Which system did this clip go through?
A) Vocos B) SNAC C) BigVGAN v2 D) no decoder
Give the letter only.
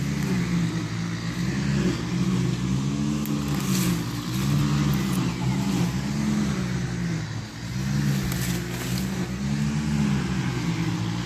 D